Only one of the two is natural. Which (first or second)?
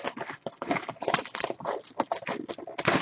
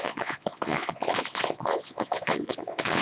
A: first